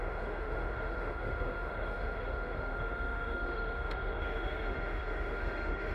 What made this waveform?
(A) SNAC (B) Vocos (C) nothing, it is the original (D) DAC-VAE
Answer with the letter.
D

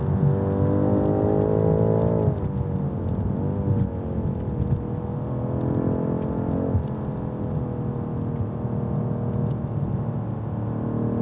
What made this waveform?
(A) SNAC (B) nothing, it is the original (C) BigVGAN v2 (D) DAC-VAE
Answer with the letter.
B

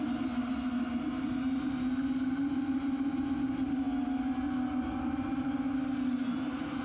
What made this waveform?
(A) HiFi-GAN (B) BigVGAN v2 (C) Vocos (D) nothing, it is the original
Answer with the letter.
D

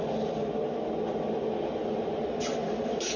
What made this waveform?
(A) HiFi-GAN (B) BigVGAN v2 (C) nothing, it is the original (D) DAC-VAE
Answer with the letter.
C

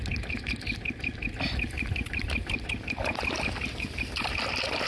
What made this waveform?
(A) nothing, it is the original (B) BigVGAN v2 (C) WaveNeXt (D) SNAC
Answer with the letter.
A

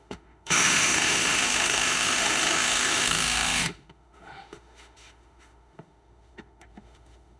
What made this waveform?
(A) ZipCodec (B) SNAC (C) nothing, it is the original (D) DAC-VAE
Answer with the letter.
D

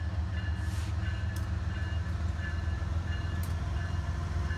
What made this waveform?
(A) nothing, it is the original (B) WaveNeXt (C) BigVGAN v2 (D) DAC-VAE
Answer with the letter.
A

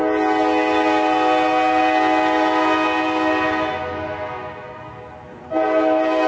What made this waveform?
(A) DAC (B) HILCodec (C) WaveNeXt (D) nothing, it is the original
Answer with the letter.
D